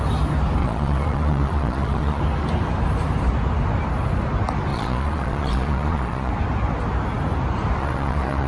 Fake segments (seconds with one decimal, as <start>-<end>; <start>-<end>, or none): 0.6-2.2; 4.7-6.3; 7.8-8.5